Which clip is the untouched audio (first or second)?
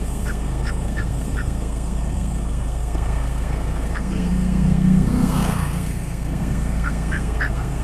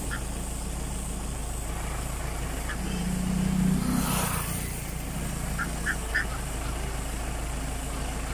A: second